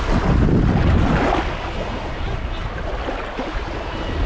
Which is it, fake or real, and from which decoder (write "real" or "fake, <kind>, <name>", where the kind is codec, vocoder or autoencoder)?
real